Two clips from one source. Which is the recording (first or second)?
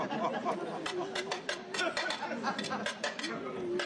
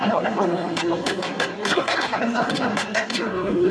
first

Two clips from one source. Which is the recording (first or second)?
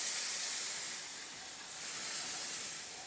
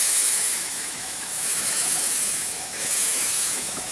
first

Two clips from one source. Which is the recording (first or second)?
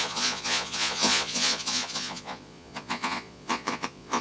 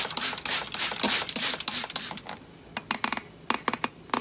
second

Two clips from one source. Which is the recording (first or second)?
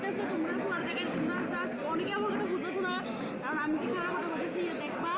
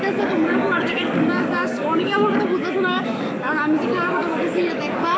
first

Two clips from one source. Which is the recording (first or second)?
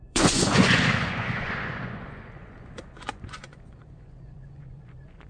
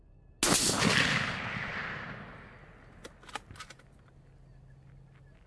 second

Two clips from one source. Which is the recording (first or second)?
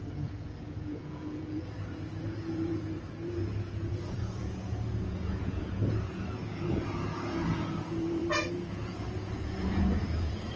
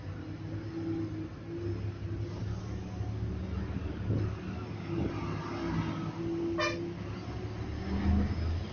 second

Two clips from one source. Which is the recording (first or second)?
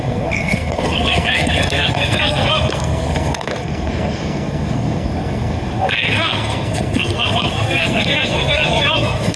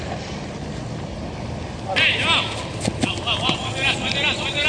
second